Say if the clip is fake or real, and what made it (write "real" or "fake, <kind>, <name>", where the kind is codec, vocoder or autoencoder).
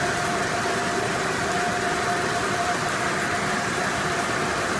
fake, vocoder, BigVGAN v2